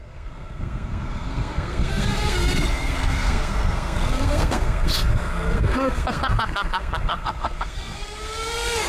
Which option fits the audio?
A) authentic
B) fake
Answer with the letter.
B